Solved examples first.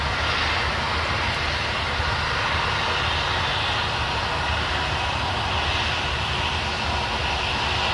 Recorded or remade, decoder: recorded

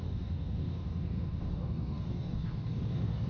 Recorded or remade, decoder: remade, codec, DAC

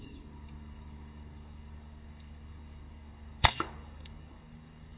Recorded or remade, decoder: remade, codec, DAC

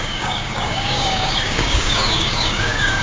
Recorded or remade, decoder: remade, codec, DAC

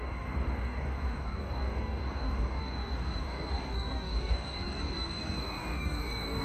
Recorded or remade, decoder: remade, codec, DAC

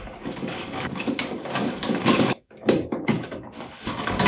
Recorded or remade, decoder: remade, codec, DAC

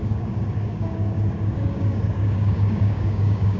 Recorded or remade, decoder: remade, codec, DAC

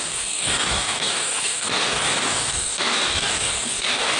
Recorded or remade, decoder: remade, codec, DAC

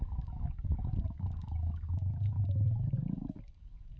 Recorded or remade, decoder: remade, codec, DAC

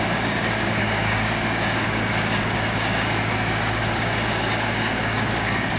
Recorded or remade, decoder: remade, codec, DAC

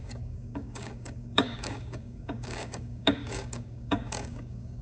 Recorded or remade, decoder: remade, codec, DAC